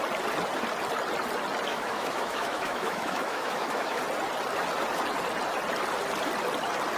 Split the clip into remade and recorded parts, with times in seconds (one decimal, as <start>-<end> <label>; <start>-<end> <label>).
0.0-1.7 recorded; 1.7-4.0 remade; 4.0-7.0 recorded